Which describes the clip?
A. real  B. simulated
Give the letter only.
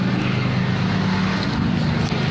A